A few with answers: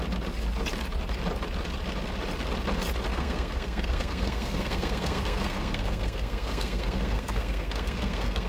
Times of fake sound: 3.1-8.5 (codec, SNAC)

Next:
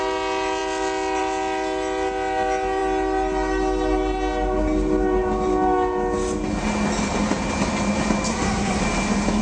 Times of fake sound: 8.3-8.8 (codec, SNAC)

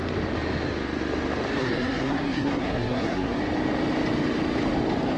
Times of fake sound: 1.6-3.4 (codec, SNAC)

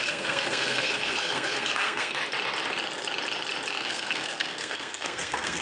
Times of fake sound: 0.0-2.2 (codec, SNAC); 3.7-5.6